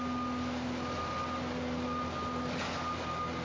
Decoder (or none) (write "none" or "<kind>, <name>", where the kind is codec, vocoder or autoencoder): none